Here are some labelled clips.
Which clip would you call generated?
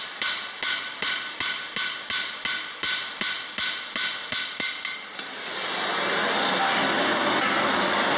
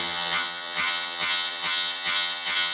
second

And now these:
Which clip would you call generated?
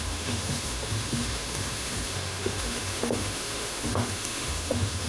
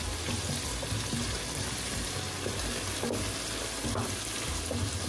first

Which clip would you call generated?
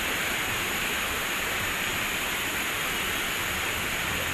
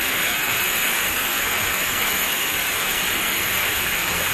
second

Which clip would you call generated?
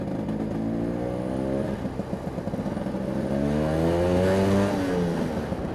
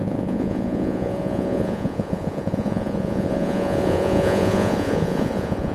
second